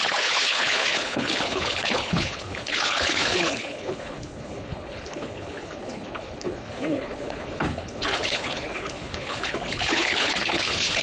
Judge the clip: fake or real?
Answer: fake